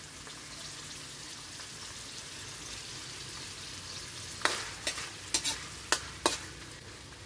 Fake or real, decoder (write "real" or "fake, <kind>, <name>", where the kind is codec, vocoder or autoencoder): real